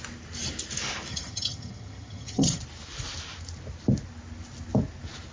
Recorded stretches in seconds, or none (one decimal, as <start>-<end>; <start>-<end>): 0.0-1.1; 2.6-5.3